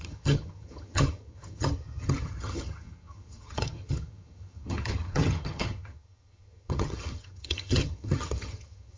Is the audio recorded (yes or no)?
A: no